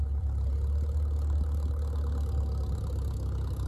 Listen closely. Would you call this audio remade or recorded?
recorded